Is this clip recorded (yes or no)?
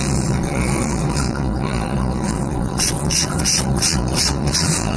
no